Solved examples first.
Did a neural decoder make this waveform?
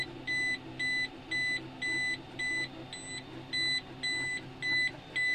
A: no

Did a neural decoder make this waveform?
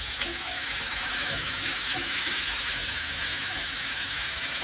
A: yes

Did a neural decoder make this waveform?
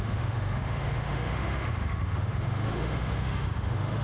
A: yes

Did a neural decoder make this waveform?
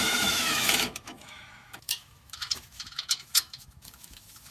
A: yes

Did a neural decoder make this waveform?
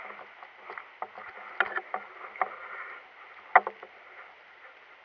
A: no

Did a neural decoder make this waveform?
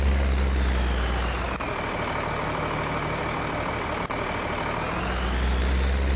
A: no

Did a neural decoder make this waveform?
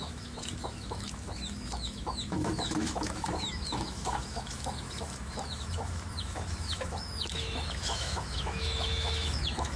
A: yes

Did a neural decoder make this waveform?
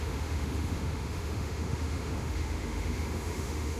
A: yes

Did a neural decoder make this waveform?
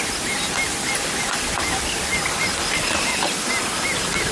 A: no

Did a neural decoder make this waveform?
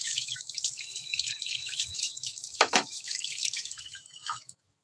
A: yes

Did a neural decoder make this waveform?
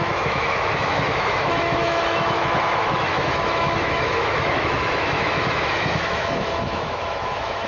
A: yes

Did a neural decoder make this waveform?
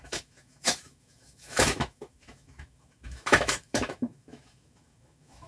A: yes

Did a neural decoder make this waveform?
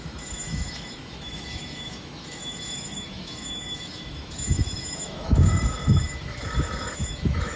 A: yes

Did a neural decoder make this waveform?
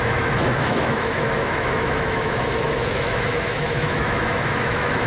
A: yes